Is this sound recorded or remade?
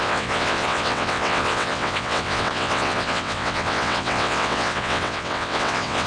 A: remade